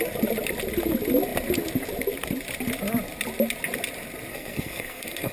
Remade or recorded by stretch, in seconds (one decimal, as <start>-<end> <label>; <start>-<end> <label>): 0.0-4.3 recorded; 4.3-5.3 remade